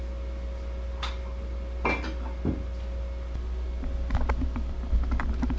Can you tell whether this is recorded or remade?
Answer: recorded